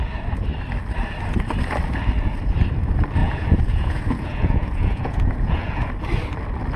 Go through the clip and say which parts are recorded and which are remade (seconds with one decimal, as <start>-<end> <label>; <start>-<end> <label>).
0.0-3.2 recorded; 3.2-5.9 remade; 5.9-6.8 recorded